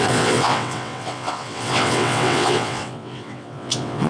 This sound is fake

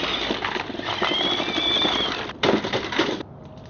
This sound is real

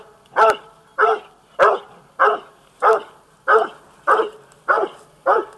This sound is real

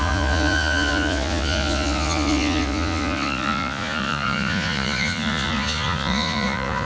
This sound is fake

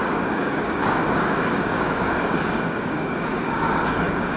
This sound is fake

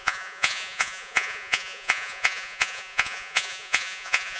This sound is fake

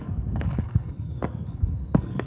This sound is fake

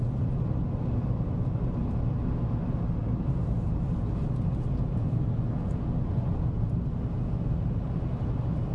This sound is real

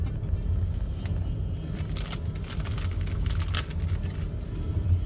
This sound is real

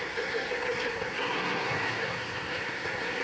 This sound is fake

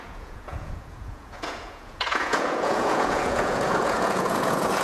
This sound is fake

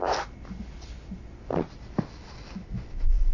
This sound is real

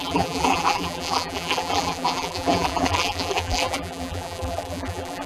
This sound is fake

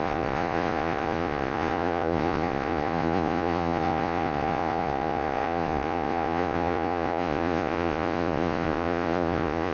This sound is fake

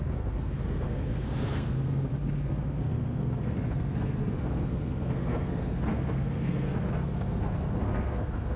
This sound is fake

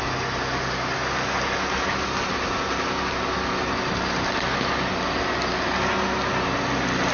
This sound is real